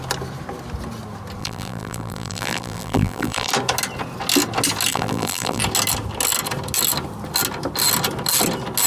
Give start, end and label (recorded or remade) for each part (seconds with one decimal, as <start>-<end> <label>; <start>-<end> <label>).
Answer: 0.0-1.4 recorded; 1.4-3.5 remade; 3.5-4.9 recorded; 4.9-5.6 remade; 5.6-8.9 recorded